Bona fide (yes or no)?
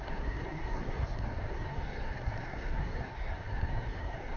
no